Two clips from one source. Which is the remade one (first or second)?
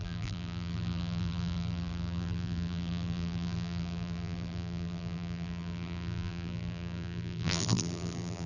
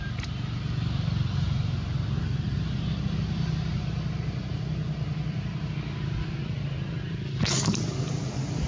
first